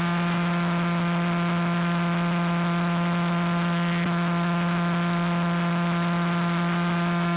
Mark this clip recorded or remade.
recorded